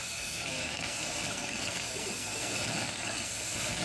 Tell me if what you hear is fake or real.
fake